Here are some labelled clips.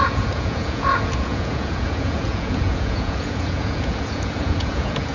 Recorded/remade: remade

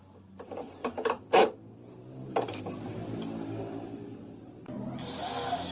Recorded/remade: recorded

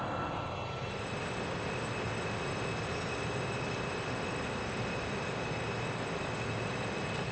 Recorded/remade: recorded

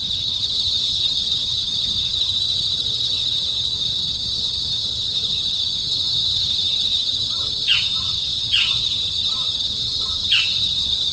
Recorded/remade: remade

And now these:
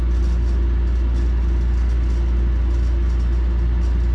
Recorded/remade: recorded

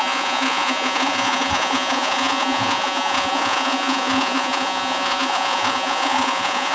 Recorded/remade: remade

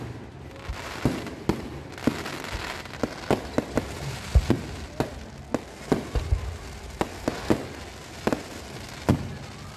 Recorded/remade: recorded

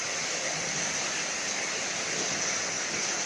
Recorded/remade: recorded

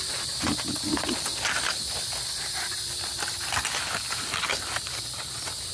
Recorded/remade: recorded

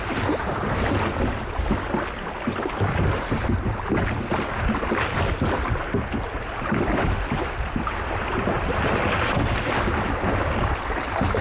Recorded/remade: recorded